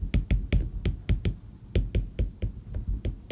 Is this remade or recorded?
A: recorded